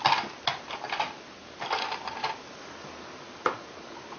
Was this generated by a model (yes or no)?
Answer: no